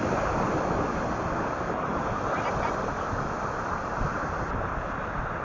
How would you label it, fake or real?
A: real